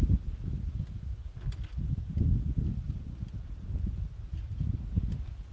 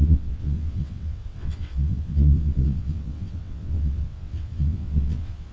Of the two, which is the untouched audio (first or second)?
first